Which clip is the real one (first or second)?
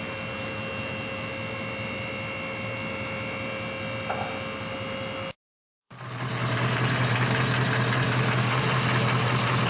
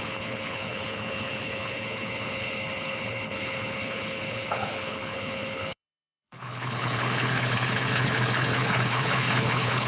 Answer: first